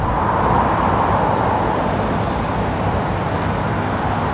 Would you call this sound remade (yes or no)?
no